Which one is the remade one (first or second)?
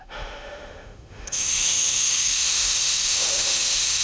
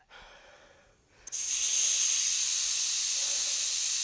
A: first